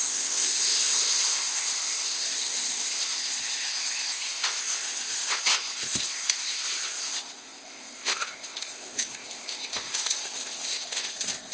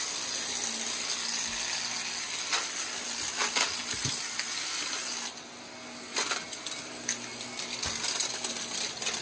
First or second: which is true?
second